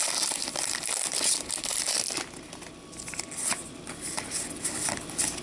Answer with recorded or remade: recorded